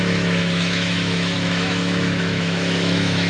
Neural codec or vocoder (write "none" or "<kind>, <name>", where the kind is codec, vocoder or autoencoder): autoencoder, DAC-VAE